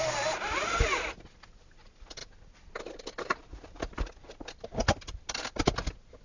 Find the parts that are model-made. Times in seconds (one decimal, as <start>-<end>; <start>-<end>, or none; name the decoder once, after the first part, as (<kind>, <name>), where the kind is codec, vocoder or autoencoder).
none